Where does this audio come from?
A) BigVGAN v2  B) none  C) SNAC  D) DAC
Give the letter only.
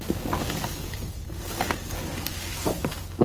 D